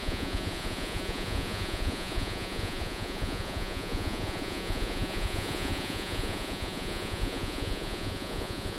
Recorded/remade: remade